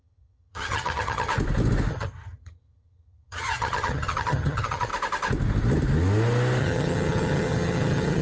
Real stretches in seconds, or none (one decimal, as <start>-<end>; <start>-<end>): 1.3-1.9; 4.9-6.6